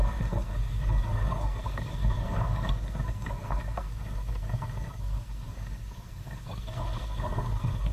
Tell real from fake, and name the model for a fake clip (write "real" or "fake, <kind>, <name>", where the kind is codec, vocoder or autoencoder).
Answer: fake, codec, SNAC